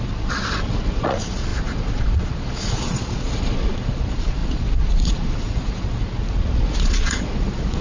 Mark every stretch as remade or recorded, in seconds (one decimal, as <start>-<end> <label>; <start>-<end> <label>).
0.0-7.8 remade